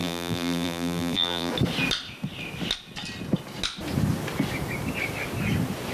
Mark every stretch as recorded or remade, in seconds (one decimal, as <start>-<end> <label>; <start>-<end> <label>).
0.0-1.5 remade; 1.5-5.9 recorded